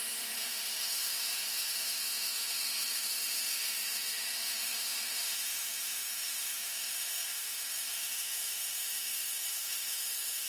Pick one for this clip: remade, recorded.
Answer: remade